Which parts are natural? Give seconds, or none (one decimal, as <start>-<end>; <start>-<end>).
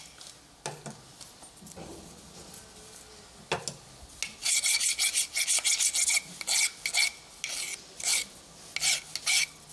0.0-9.7